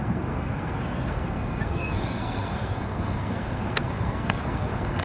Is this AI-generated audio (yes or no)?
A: yes